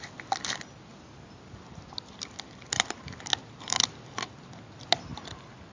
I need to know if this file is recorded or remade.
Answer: recorded